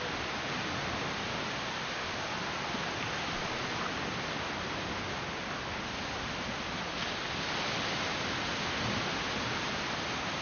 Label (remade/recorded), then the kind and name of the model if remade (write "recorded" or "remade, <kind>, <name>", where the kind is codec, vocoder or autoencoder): recorded